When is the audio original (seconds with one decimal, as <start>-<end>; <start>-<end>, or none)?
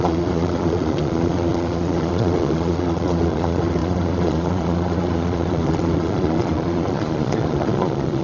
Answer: none